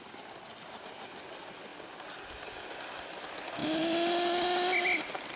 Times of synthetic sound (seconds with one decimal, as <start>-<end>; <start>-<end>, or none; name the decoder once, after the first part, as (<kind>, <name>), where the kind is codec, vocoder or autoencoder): none